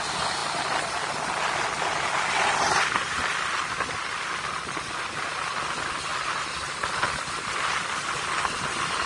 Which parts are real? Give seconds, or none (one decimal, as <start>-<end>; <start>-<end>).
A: 0.0-9.1